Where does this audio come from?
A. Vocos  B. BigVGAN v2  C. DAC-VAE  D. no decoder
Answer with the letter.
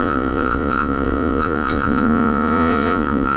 A